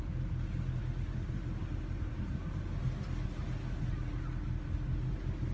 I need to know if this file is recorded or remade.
recorded